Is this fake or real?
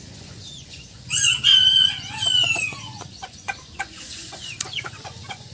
fake